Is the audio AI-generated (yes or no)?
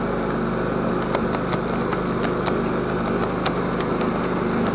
no